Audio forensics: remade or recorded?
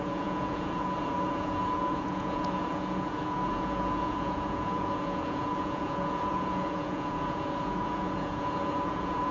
remade